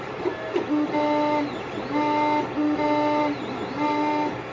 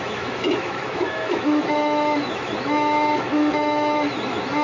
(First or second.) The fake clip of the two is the second